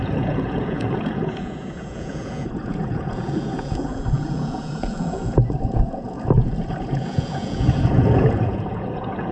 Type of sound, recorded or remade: remade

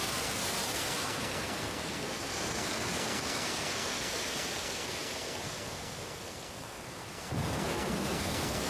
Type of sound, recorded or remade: remade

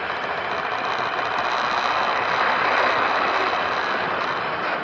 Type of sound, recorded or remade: recorded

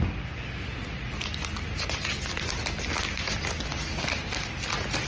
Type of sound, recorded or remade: recorded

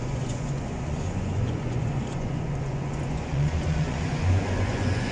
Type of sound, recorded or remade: remade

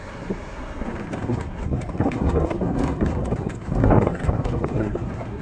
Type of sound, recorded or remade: remade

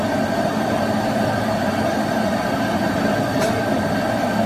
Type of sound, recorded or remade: recorded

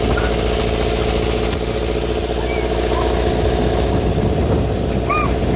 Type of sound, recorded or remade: recorded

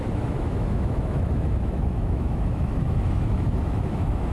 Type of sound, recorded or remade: remade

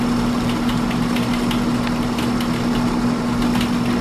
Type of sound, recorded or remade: recorded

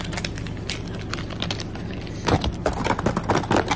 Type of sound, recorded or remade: recorded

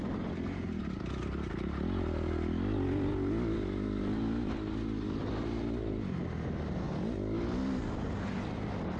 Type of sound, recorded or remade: recorded